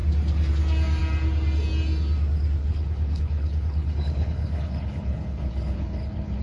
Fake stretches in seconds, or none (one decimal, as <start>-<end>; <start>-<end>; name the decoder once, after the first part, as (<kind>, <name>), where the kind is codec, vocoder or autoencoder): 2.6-6.4 (codec, HILCodec)